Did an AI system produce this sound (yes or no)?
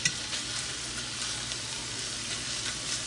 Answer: no